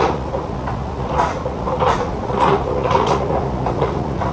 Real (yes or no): no